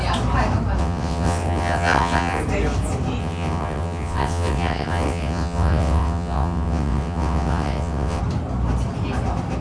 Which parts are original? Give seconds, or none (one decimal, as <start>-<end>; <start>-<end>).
0.0-0.8; 2.4-3.2; 8.2-9.6